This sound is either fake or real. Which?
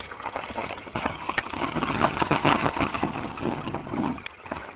fake